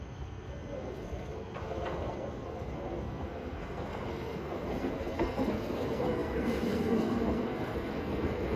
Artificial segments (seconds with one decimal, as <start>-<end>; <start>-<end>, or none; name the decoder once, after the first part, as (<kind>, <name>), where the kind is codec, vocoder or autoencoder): 0.0-8.6 (codec, SNAC)